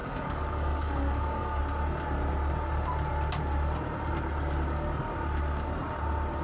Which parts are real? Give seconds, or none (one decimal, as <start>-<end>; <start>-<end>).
1.6-6.4